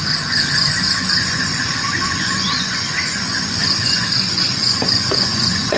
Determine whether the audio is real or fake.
fake